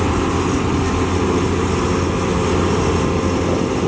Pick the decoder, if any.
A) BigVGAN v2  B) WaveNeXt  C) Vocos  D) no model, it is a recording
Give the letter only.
D